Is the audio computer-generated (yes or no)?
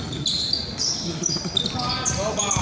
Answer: no